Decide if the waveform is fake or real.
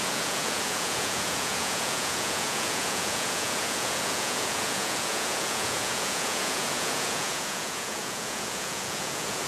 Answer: fake